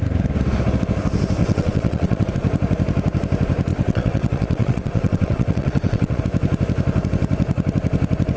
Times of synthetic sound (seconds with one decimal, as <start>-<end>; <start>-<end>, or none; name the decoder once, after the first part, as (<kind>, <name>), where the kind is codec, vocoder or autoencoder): 1.4-2.3 (vocoder, WaveNeXt); 3.7-6.2